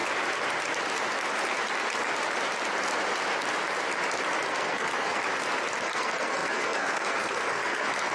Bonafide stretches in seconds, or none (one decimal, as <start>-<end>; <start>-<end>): 0.0-4.5; 5.2-5.8

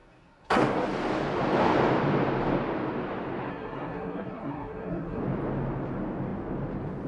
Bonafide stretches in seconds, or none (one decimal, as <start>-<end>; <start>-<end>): 0.6-3.5; 5.2-7.1

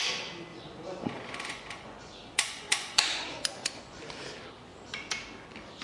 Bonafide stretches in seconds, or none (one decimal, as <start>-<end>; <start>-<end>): 0.0-0.5; 4.0-5.8

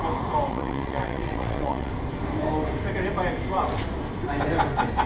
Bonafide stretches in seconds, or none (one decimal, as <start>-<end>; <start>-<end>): 0.0-0.5; 1.9-5.1